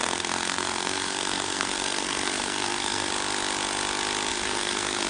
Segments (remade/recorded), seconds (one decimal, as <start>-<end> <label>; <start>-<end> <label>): 0.0-3.1 remade; 3.1-4.3 recorded; 4.3-5.1 remade